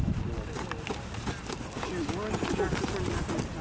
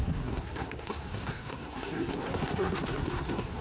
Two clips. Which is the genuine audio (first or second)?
first